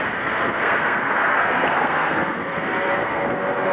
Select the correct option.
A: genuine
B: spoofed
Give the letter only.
B